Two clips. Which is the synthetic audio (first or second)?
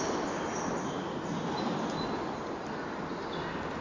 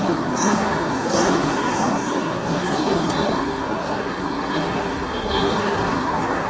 second